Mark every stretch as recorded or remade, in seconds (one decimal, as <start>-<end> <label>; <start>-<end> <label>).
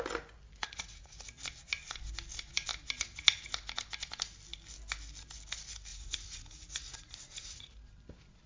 0.0-0.6 recorded; 0.6-1.2 remade; 1.2-5.9 recorded; 5.9-7.8 remade; 7.8-8.5 recorded